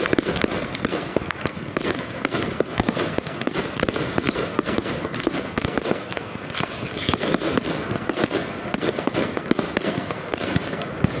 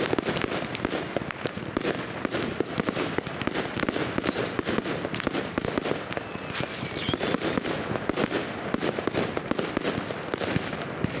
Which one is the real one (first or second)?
second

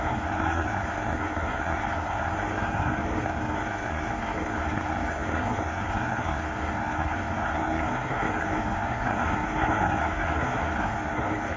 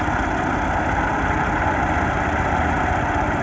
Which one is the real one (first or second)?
second